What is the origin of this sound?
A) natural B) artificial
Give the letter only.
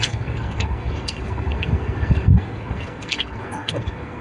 B